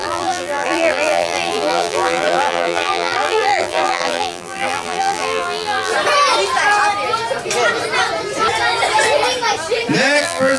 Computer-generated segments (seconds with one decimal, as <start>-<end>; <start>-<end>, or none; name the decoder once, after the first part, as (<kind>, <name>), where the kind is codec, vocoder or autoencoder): 0.0-5.9 (vocoder, BigVGAN v2); 10.2-10.6